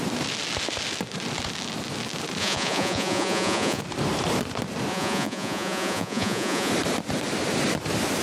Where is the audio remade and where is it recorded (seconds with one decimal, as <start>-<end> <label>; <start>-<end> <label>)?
0.0-2.4 recorded; 2.4-3.8 remade; 3.8-4.9 recorded; 4.9-6.7 remade; 6.7-8.2 recorded